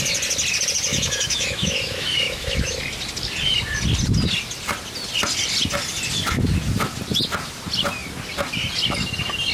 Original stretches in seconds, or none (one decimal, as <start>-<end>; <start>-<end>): 0.0-0.9; 2.8-9.5